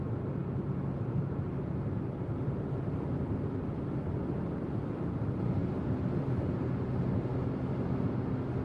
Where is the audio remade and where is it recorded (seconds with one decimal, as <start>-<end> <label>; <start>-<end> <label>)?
0.0-8.6 recorded